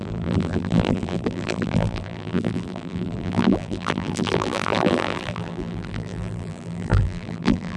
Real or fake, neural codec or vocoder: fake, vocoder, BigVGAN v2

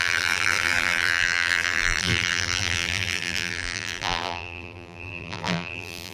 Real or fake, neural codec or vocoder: fake, vocoder, BigVGAN v2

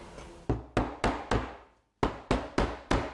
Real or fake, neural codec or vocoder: real